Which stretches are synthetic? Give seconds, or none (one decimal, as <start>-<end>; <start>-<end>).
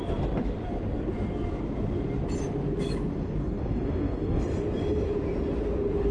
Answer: 3.1-4.4